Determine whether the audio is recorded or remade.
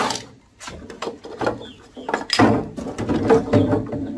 recorded